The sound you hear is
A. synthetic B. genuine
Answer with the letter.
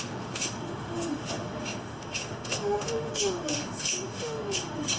A